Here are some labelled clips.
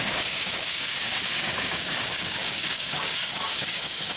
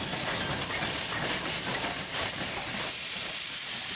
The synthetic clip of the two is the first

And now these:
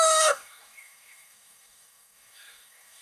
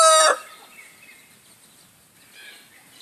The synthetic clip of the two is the first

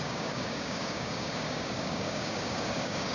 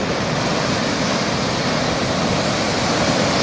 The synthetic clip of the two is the first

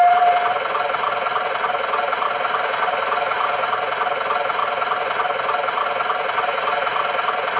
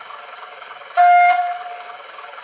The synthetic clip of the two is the second